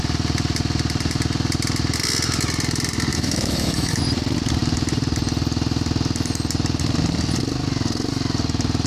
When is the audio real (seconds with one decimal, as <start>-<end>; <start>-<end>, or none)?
0.0-3.1; 4.0-8.9